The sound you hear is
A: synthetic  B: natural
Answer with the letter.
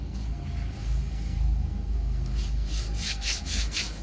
A